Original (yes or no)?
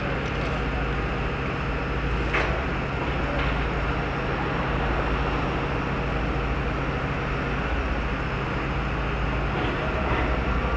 yes